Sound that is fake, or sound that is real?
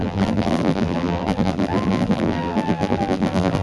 fake